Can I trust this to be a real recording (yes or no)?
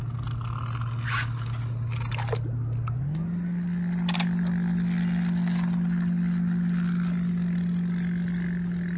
yes